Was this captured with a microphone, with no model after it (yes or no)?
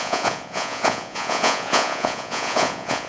no